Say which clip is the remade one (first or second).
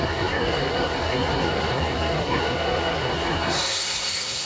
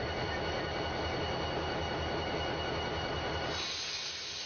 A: first